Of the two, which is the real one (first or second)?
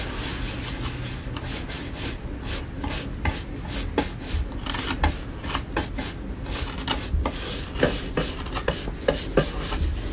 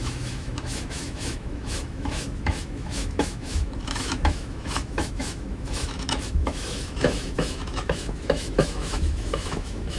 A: first